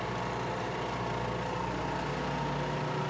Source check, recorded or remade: recorded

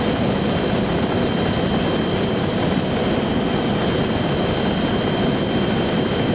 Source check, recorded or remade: recorded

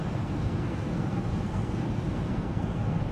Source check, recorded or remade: remade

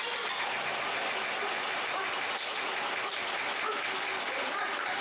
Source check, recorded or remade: recorded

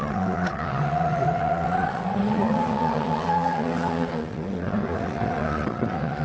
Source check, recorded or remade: remade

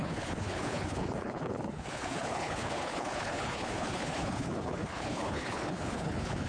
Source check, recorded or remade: remade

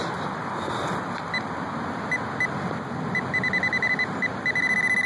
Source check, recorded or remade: recorded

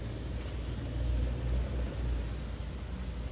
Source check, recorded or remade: recorded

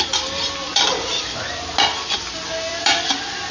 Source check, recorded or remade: recorded